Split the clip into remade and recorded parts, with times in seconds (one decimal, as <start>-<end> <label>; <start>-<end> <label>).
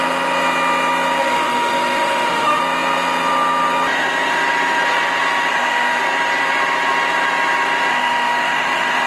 0.0-1.2 recorded; 1.2-2.6 remade; 2.6-5.5 recorded; 5.5-6.0 remade; 6.0-7.9 recorded; 7.9-9.1 remade